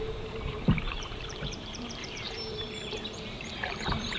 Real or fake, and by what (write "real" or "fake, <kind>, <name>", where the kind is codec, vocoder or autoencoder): fake, vocoder, BigVGAN v2